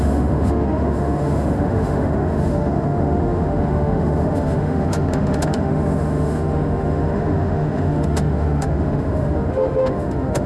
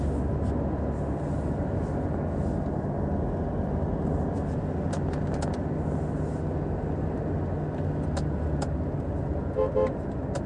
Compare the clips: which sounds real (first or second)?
second